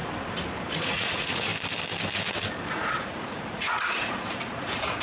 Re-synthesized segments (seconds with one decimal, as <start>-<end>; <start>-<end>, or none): 0.8-1.5; 2.7-5.0